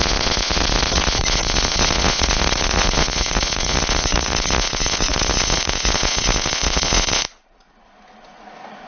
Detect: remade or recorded remade